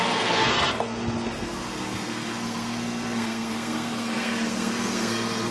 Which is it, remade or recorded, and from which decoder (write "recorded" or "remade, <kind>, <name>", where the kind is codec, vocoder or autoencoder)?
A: remade, codec, SNAC